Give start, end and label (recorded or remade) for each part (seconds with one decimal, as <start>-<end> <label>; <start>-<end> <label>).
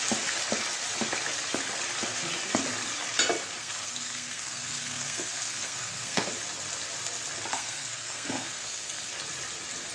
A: 0.0-3.6 recorded; 3.6-6.3 remade; 6.3-7.5 recorded; 7.5-9.1 remade; 9.1-9.9 recorded